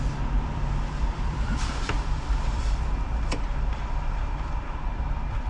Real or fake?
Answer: fake